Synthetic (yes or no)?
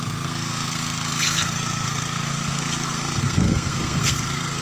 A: yes